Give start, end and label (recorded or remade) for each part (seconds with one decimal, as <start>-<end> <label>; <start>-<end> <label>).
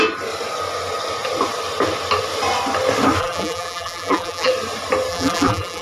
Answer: 0.0-3.2 recorded; 3.2-4.5 remade; 4.5-5.1 recorded; 5.1-5.8 remade